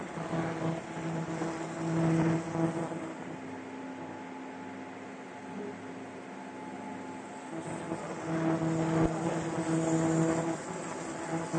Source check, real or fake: real